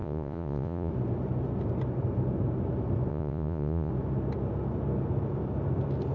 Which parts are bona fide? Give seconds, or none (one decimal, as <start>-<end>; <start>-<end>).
0.9-3.1; 3.9-6.1